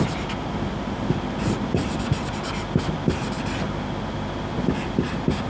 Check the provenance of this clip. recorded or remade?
recorded